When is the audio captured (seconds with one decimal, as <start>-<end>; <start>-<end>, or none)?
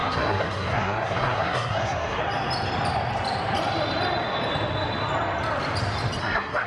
2.2-6.2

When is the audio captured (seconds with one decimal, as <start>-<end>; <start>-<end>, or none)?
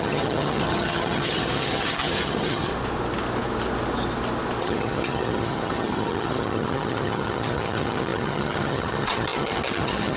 2.7-4.6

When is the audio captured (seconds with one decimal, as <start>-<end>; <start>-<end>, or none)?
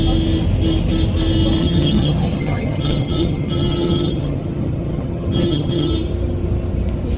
0.0-1.6; 5.9-7.2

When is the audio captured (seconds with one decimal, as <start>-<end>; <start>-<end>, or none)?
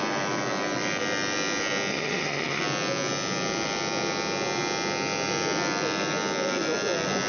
0.0-1.9; 2.6-7.3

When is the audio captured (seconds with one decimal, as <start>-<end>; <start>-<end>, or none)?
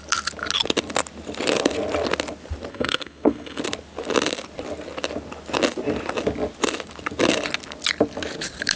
0.0-2.7; 3.6-8.8